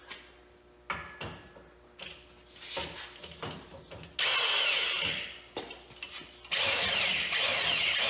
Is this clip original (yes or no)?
yes